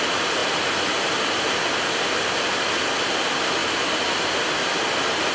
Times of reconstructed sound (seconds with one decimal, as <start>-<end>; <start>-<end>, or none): none